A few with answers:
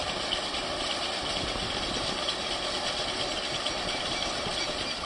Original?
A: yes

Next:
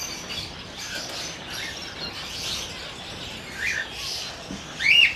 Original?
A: yes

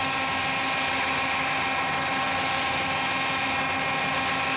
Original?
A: yes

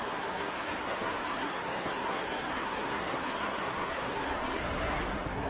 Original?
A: no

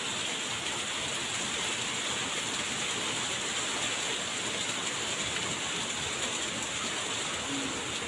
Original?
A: yes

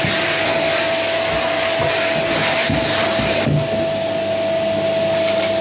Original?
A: yes